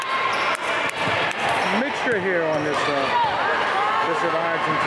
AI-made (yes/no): no